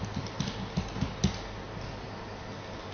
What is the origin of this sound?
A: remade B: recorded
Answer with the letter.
B